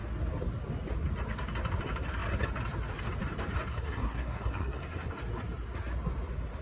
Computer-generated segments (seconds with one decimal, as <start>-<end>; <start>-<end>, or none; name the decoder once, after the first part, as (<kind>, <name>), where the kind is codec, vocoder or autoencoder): 3.7-5.1 (codec, SNAC)